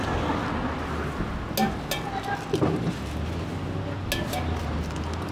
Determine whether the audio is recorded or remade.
recorded